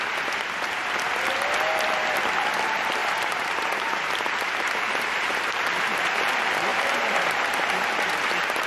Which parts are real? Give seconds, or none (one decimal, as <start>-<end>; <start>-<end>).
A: 0.0-3.0; 6.3-6.7